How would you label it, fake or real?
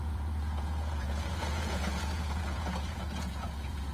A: fake